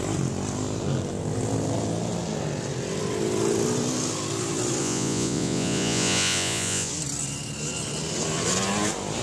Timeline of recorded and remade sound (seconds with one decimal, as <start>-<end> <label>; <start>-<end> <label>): 0.0-4.8 recorded; 4.8-6.9 remade; 6.9-9.2 recorded